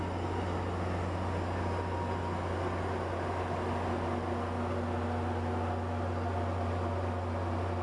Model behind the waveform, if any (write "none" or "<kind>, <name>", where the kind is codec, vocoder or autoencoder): none